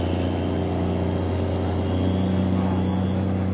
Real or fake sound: real